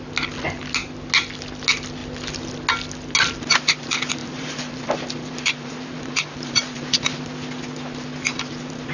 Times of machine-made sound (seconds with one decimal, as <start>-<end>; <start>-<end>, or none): 4.2-7.2